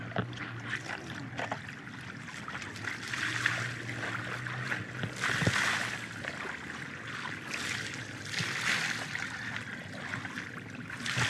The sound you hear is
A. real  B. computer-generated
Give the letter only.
A